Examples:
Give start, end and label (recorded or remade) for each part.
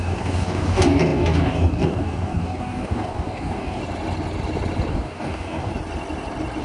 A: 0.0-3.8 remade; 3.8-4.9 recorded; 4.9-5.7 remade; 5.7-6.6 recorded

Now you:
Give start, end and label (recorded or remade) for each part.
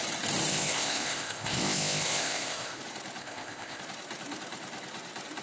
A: 0.0-0.5 recorded; 0.5-2.8 remade; 2.8-3.2 recorded; 3.2-3.8 remade; 3.8-5.4 recorded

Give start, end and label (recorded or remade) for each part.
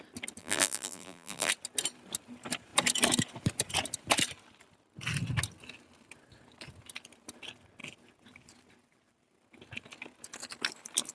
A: 0.0-0.4 recorded; 0.4-1.5 remade; 1.5-11.1 recorded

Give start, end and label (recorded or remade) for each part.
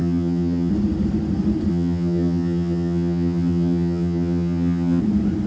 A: 0.0-0.7 remade; 0.7-1.7 recorded; 1.7-5.0 remade; 5.0-5.5 recorded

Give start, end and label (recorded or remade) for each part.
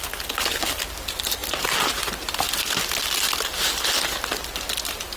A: 0.0-5.2 recorded